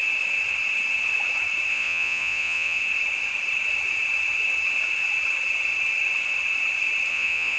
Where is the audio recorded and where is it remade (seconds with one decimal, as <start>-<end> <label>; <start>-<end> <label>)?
0.0-1.7 recorded; 1.7-2.8 remade; 2.8-7.1 recorded; 7.1-7.6 remade